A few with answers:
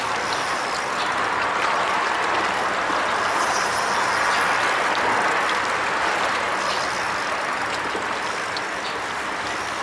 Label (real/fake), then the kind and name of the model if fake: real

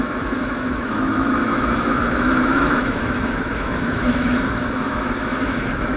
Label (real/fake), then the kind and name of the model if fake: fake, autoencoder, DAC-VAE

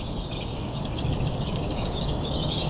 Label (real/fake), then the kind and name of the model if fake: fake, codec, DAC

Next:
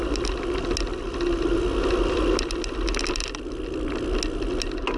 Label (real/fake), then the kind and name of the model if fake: real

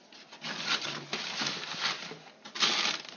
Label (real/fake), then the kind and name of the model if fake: real